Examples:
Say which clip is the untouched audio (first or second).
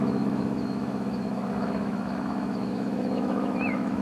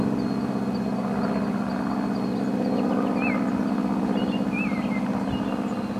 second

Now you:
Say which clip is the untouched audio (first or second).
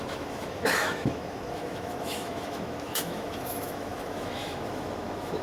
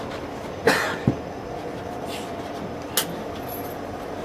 second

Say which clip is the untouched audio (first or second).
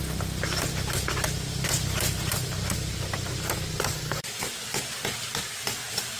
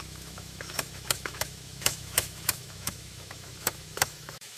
first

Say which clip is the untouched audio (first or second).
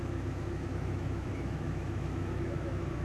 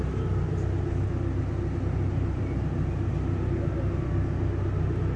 second